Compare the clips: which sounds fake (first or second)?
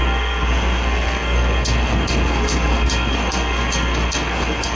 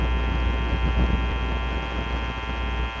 first